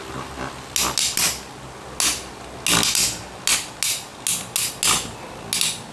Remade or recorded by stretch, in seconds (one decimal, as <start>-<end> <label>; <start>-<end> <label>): 0.0-5.9 recorded